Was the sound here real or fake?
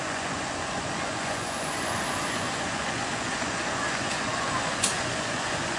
fake